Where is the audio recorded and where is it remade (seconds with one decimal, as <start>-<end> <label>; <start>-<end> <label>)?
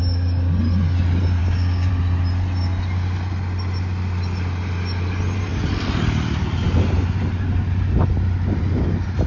0.0-1.4 recorded; 1.4-1.9 remade; 1.9-9.3 recorded